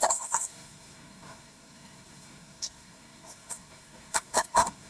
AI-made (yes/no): yes